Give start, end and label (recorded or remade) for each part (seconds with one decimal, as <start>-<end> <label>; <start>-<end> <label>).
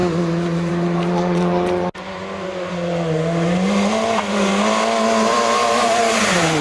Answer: 0.0-0.7 recorded; 0.7-6.6 remade